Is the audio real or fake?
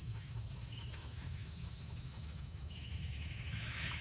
fake